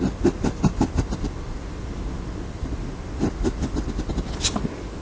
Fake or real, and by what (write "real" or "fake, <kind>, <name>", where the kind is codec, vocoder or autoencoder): real